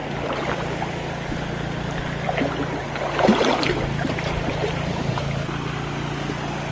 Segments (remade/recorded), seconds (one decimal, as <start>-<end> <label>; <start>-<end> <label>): 0.0-0.5 remade; 0.5-2.8 recorded; 2.8-5.2 remade; 5.2-6.7 recorded